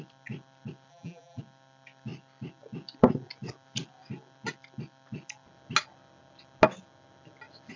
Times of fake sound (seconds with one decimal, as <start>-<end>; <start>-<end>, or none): 0.9-1.4